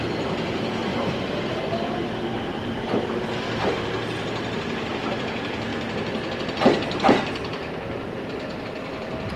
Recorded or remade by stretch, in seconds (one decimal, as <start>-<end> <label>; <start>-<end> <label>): 0.0-0.9 recorded; 0.9-3.0 remade; 3.0-5.7 recorded; 5.7-8.6 remade; 8.6-9.4 recorded